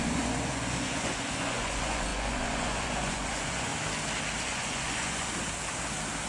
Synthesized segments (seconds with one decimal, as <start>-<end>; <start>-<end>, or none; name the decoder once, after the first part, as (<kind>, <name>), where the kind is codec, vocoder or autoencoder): 0.0-3.7 (vocoder, Vocos); 4.4-5.3